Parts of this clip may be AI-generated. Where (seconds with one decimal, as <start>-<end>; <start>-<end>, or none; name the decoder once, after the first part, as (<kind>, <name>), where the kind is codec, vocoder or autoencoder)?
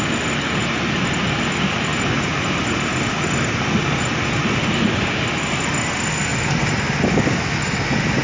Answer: 6.3-7.6 (vocoder, BigVGAN v2)